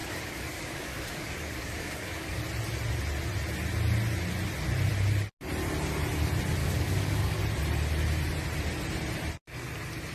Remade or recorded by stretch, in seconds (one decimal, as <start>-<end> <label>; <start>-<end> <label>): 0.0-2.4 remade; 2.4-6.6 recorded; 6.6-7.4 remade; 7.4-10.1 recorded